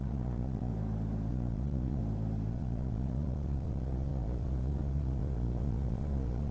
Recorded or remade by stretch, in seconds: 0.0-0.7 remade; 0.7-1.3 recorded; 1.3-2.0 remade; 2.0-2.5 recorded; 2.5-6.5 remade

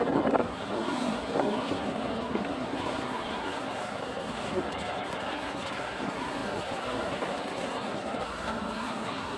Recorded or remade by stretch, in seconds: 0.0-9.4 remade

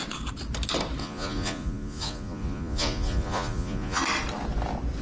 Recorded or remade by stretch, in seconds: 0.0-1.0 recorded; 1.0-4.0 remade; 4.0-5.0 recorded

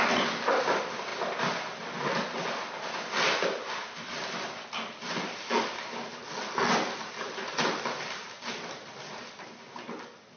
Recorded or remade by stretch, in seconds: 0.0-10.4 recorded